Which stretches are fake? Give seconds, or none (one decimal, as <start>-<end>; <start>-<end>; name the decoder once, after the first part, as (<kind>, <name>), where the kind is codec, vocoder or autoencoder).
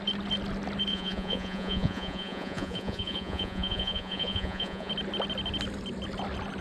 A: 0.9-4.9 (vocoder, Vocos)